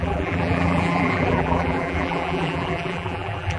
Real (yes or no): no